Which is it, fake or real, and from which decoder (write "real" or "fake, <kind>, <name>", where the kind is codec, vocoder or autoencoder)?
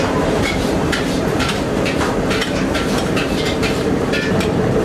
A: fake, vocoder, BigVGAN v2